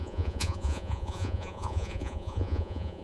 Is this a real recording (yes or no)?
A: no